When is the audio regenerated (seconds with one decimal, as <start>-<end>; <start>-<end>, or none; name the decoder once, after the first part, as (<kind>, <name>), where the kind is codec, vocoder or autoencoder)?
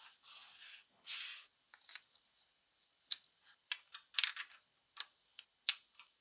none